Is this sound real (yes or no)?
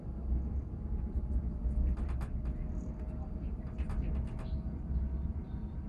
yes